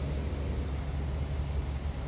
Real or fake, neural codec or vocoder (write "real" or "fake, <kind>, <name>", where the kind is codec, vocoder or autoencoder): real